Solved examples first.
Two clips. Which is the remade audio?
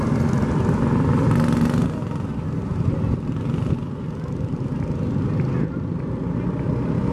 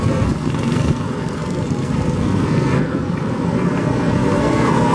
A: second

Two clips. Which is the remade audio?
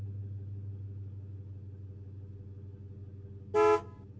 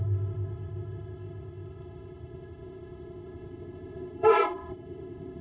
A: second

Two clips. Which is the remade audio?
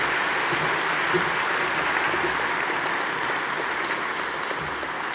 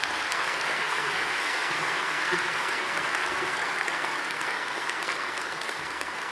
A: second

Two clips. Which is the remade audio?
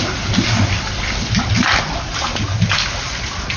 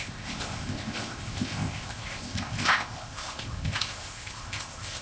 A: second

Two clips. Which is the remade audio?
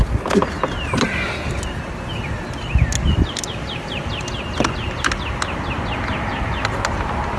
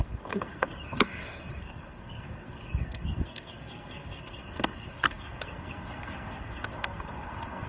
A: second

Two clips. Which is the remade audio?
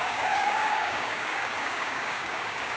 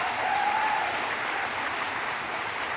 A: first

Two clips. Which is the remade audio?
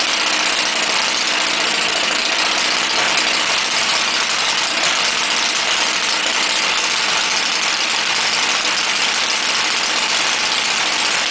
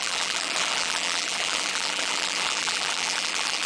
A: second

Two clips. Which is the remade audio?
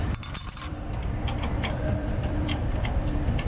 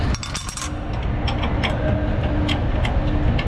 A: first